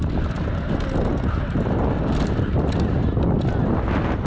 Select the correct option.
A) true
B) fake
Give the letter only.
A